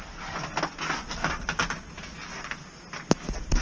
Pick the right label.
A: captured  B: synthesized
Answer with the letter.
A